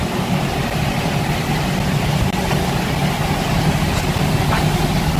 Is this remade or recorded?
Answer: recorded